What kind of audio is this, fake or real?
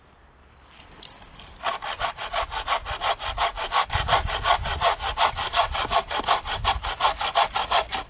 real